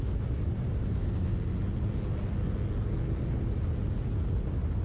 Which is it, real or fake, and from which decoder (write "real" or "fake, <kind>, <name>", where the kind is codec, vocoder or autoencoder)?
real